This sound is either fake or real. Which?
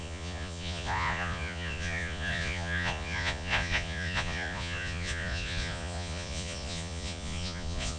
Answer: fake